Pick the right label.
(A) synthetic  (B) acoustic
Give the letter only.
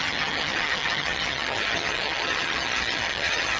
A